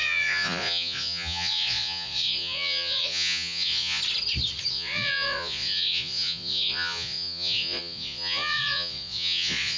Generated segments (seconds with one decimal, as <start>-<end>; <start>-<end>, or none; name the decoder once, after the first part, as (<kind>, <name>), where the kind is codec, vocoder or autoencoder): 0.0-4.0 (vocoder, Vocos); 4.7-9.8